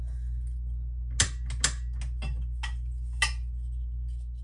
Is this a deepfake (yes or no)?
no